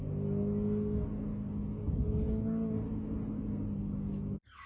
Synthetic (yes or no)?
no